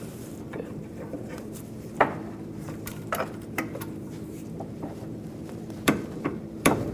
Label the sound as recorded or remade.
remade